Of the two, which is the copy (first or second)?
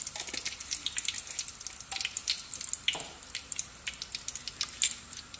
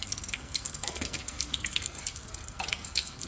second